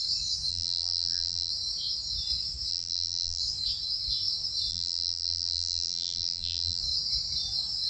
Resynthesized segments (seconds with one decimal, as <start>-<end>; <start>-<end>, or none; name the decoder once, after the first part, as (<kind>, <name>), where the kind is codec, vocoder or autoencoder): 0.5-1.5 (vocoder, BigVGAN v2); 2.7-3.4; 4.7-6.8

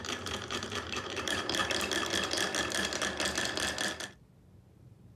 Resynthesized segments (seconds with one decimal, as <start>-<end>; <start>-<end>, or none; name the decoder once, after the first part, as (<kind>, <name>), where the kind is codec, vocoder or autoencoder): 0.0-1.6 (vocoder, BigVGAN v2); 4.7-5.2